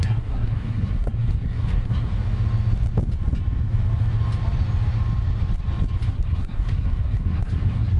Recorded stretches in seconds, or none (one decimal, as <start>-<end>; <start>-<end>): 2.1-6.1